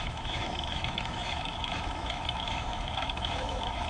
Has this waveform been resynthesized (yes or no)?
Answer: yes